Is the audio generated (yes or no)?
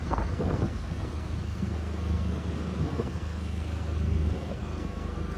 yes